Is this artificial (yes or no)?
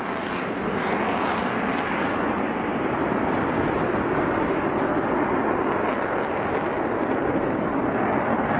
no